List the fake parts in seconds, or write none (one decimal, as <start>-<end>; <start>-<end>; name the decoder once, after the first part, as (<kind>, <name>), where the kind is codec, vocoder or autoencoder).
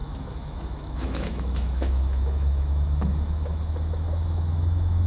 0.0-5.1 (autoencoder, DAC-VAE)